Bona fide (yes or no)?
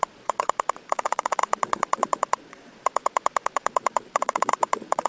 no